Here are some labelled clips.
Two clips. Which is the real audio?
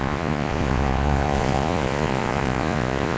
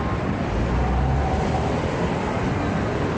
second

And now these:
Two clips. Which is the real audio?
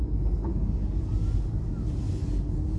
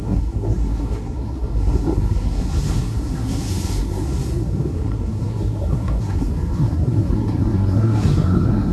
first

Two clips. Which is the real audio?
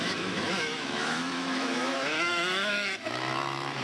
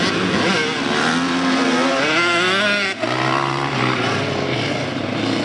second